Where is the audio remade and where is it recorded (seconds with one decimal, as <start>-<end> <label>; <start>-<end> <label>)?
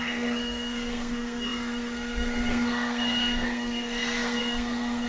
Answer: 0.0-5.1 remade